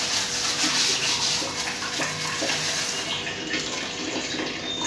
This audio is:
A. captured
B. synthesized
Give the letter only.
A